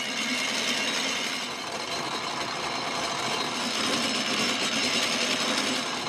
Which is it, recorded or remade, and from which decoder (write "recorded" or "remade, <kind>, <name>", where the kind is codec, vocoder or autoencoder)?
recorded